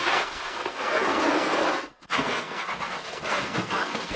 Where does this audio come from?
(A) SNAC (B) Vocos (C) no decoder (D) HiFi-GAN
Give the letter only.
A